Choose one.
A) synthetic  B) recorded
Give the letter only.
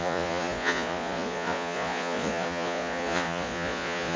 A